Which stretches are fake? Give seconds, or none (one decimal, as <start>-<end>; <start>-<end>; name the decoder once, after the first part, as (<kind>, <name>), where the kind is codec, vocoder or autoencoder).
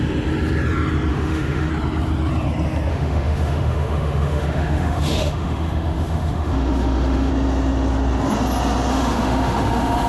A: 1.1-1.7 (autoencoder, DAC-VAE); 2.9-7.3; 8.9-10.1